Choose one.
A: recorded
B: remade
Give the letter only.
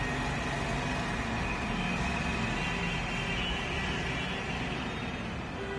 A